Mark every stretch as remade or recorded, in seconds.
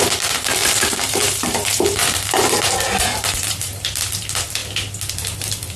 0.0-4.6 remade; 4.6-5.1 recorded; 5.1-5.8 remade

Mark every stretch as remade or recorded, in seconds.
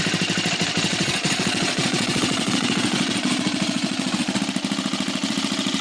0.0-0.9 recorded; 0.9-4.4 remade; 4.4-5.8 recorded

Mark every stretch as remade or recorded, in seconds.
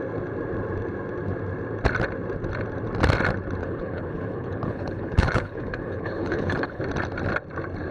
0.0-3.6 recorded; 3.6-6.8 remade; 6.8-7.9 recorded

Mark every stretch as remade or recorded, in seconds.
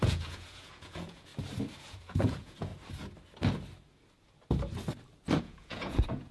0.0-1.3 remade; 1.3-1.8 recorded; 1.8-2.7 remade; 2.7-5.4 recorded; 5.4-6.3 remade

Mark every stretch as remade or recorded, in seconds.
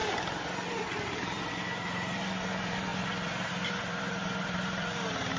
0.0-5.4 recorded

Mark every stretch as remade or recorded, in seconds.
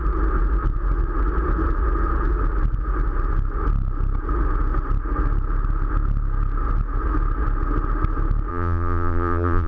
0.0-8.5 recorded; 8.5-9.7 remade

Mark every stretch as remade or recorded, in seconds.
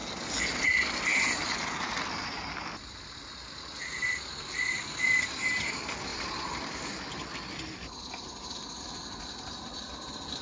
0.0-10.4 recorded